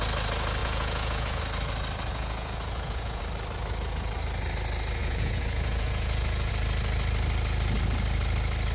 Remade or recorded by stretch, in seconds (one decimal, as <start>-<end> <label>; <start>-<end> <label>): 0.0-0.6 recorded; 0.6-1.4 remade; 1.4-2.1 recorded; 2.1-3.2 remade; 3.2-5.0 recorded; 5.0-6.5 remade; 6.5-8.7 recorded